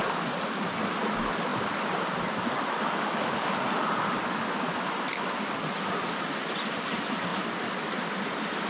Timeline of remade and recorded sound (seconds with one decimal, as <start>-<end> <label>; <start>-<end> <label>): 0.0-8.7 recorded